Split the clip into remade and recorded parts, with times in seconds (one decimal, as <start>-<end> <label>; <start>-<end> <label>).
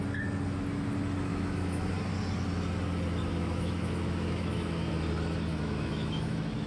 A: 0.0-1.3 recorded; 1.3-1.9 remade; 1.9-3.3 recorded; 3.3-4.9 remade; 4.9-5.5 recorded; 5.5-6.7 remade